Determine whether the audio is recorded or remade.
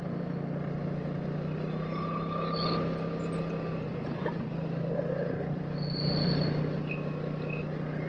recorded